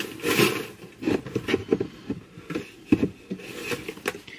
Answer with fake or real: real